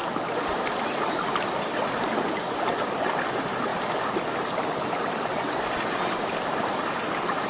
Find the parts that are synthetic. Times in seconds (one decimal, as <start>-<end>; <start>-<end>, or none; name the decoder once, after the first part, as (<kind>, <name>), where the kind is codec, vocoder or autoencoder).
none